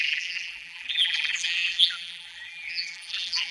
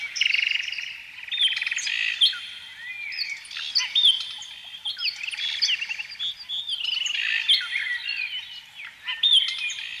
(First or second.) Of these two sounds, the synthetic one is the first